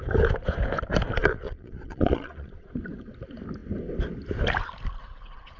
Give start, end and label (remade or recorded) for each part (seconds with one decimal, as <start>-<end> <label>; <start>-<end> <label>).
0.0-1.2 recorded; 1.2-2.7 remade; 2.7-5.0 recorded; 5.0-5.6 remade